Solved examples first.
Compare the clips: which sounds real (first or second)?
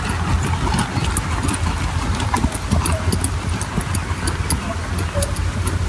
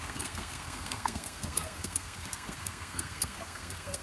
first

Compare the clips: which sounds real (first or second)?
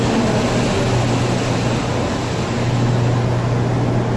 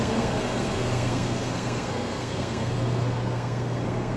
first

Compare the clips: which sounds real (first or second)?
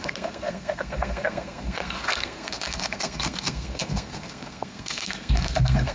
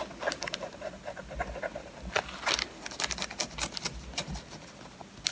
second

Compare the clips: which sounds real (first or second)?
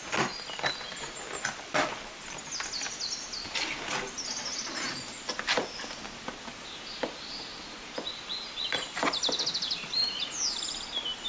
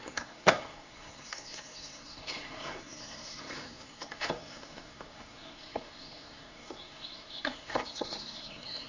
first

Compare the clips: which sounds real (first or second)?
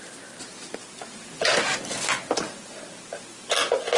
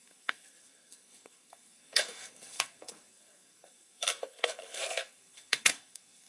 first